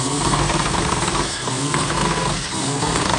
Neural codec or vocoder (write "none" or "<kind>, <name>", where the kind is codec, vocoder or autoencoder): codec, SNAC